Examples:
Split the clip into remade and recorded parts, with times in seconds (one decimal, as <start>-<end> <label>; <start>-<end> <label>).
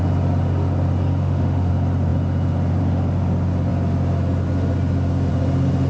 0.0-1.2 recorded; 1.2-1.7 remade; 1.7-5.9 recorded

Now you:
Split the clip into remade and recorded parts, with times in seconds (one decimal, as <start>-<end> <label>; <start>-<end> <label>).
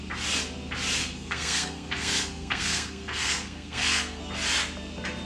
0.0-1.0 recorded; 1.0-4.2 remade; 4.2-5.3 recorded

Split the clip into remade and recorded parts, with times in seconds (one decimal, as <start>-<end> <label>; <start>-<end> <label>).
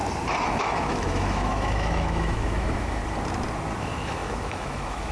0.0-0.6 recorded; 0.6-3.0 remade; 3.0-3.8 recorded; 3.8-5.1 remade